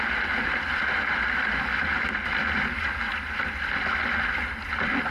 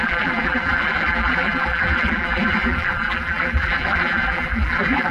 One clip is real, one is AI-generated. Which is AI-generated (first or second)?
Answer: second